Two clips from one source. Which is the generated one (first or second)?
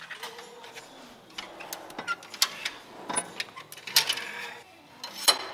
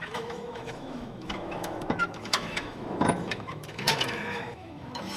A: second